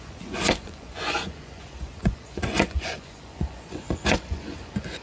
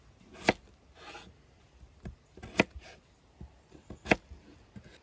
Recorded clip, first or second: second